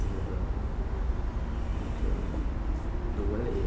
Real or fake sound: real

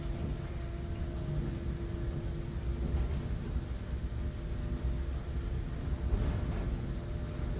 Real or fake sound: real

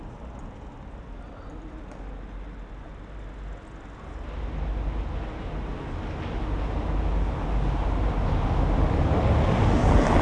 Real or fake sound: real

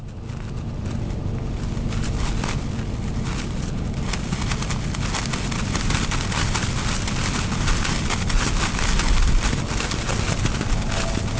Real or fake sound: real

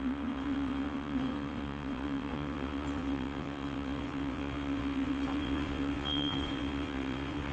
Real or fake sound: fake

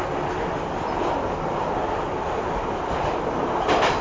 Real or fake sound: real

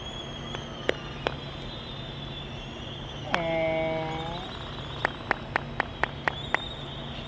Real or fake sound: real